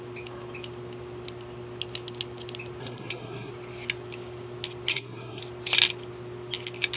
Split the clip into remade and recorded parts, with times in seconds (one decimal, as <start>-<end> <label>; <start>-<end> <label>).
0.0-2.8 recorded; 2.8-3.5 remade; 3.5-4.9 recorded; 4.9-5.4 remade; 5.4-7.0 recorded